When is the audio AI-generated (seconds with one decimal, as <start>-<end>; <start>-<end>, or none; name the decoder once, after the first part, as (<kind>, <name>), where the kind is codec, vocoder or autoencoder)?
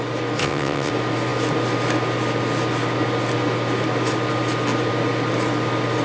0.4-0.9 (vocoder, WaveNeXt)